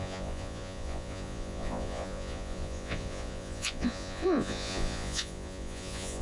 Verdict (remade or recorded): remade